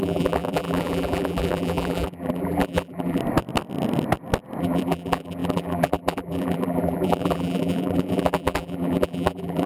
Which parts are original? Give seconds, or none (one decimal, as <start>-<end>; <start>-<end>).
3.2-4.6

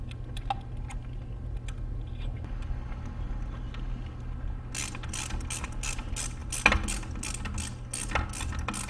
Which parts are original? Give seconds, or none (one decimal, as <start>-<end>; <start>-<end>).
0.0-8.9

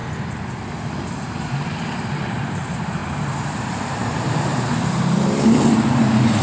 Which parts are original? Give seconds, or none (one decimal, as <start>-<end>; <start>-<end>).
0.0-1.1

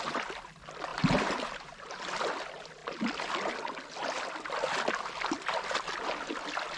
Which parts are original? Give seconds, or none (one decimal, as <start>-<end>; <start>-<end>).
0.0-0.9; 1.9-6.8